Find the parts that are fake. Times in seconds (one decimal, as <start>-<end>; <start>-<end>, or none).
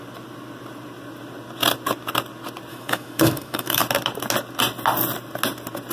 2.7-3.8